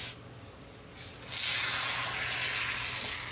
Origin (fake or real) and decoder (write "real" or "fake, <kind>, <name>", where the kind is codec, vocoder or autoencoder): real